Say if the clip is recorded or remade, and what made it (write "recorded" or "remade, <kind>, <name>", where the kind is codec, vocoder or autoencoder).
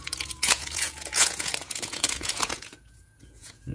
remade, vocoder, Vocos